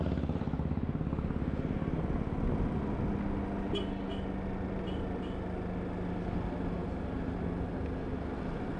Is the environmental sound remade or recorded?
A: recorded